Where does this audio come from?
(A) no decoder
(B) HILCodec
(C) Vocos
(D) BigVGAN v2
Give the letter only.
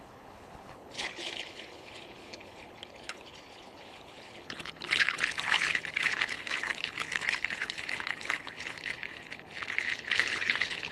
B